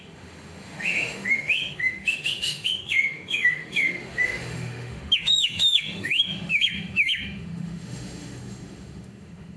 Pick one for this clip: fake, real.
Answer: fake